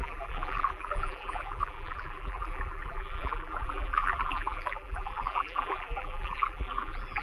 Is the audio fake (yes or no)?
yes